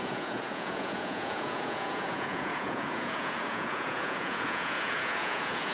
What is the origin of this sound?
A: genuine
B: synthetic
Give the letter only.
B